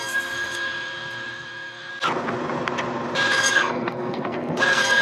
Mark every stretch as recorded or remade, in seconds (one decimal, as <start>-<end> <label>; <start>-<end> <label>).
0.0-1.9 remade; 1.9-3.4 recorded; 3.4-5.0 remade